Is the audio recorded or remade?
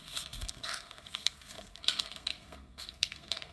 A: remade